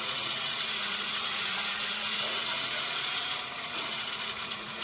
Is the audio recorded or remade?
remade